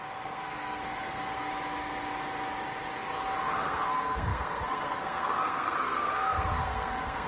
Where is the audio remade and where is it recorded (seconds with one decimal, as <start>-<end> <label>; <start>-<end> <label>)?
0.0-1.5 remade; 1.5-3.6 recorded; 3.6-7.3 remade